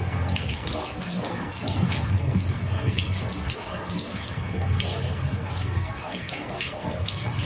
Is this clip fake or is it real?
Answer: fake